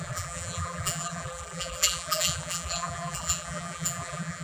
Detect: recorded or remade remade